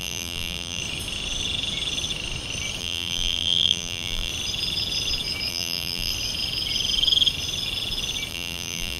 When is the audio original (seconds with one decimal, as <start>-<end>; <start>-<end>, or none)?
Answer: 0.8-2.8; 4.3-5.5; 6.1-8.3